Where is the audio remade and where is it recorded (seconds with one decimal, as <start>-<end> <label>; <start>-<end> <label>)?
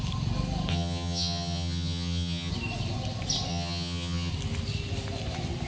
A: 0.0-0.7 recorded; 0.7-2.5 remade; 2.5-3.5 recorded; 3.5-4.3 remade; 4.3-5.7 recorded